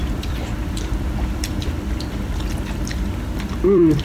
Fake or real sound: fake